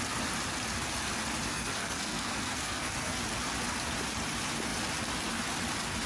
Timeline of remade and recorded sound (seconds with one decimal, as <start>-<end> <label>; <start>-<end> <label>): 0.0-1.5 recorded; 1.5-3.2 remade; 3.2-6.1 recorded